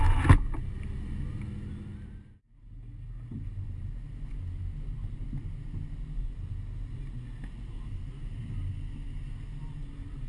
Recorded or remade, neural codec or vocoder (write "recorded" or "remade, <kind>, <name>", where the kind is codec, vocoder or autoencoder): recorded